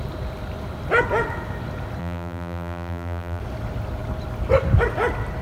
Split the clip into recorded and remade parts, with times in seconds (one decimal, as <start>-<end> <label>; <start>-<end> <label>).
0.0-2.0 recorded; 2.0-3.4 remade; 3.4-5.4 recorded